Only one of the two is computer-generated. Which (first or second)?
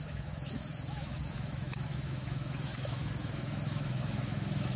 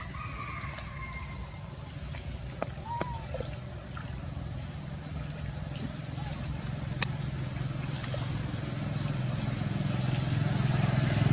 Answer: first